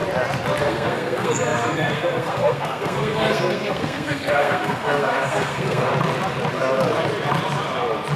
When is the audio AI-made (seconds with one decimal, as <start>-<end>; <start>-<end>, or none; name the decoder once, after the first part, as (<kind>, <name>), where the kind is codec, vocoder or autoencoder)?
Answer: 0.6-5.9 (codec, SNAC)